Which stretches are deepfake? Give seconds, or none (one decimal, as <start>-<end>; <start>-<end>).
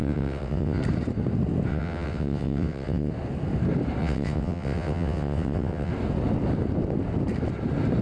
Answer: 0.0-0.8; 1.7-3.1; 4.0-5.9